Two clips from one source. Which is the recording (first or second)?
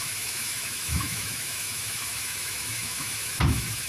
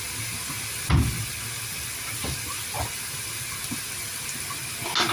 second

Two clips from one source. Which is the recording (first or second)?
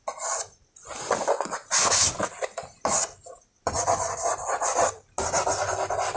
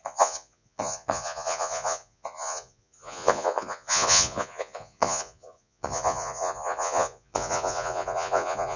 first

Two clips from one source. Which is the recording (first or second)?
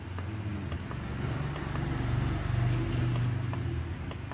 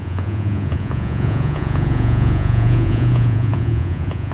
first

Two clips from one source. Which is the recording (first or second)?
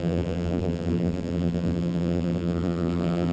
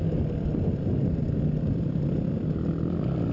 second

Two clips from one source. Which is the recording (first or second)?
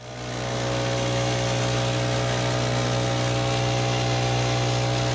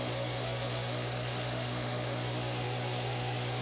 first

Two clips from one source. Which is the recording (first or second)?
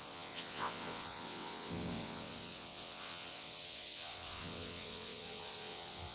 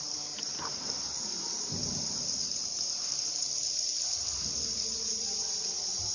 second